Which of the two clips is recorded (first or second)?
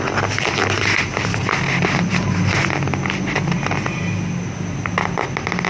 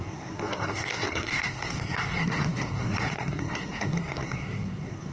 first